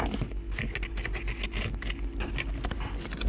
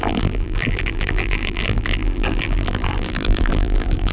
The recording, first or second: first